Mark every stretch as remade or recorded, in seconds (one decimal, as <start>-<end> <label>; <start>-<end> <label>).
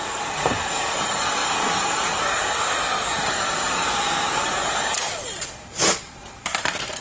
0.0-1.4 remade; 1.4-5.6 recorded; 5.6-7.0 remade